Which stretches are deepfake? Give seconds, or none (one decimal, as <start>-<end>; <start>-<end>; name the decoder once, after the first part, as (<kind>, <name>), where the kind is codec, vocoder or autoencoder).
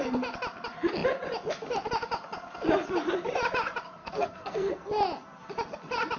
4.0-4.9 (codec, SNAC)